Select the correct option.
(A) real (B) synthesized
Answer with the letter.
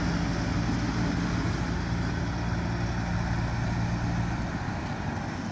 A